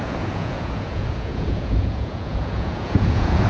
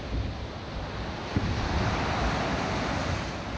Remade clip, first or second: first